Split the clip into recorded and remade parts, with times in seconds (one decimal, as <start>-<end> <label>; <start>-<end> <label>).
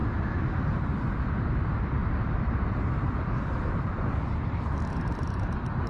0.0-5.9 recorded